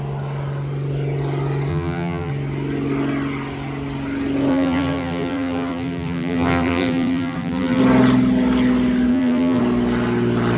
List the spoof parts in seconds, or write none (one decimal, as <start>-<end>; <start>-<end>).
1.7-2.3; 4.5-7.8; 9.1-9.6